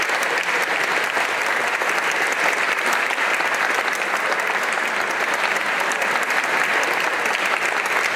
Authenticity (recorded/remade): recorded